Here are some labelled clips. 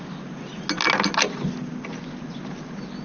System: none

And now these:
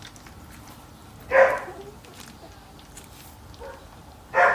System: none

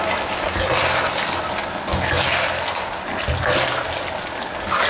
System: none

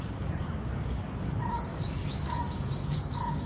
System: codec, DAC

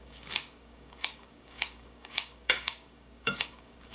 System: codec, DAC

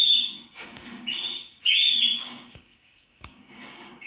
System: codec, DAC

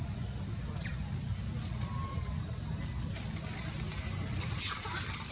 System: none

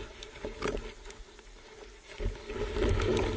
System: none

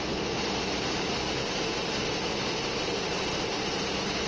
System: none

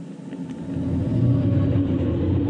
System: none